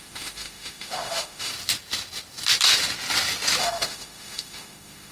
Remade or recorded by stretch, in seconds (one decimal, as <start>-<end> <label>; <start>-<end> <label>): 0.0-1.5 remade; 1.5-3.6 recorded; 3.6-5.1 remade